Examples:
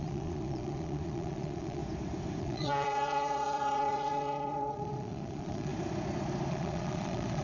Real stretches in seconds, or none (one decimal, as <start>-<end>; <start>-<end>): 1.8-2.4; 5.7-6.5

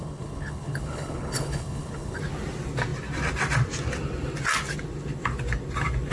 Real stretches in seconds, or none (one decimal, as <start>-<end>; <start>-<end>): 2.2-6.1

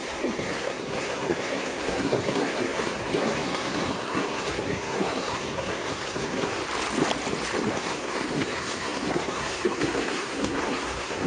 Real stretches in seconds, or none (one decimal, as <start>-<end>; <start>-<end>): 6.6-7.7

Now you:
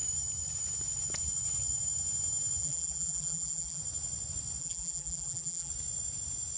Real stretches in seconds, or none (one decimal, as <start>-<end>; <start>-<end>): 0.0-2.6; 3.8-4.6; 5.7-6.6

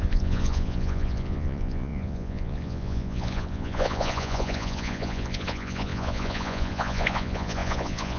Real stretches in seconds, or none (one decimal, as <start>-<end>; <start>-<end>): none

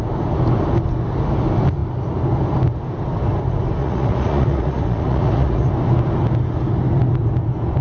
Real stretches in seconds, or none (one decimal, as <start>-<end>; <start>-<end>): 0.0-3.8; 5.7-7.8

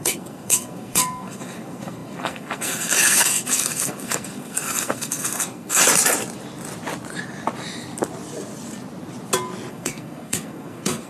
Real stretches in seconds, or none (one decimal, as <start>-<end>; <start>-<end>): 5.8-9.7

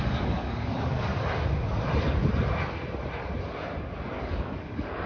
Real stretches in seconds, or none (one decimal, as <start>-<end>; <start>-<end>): 1.1-4.2